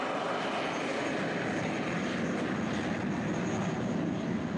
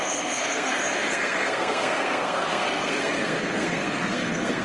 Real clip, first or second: first